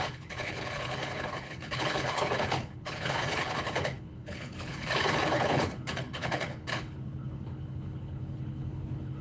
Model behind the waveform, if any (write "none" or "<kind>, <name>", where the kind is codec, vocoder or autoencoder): codec, HILCodec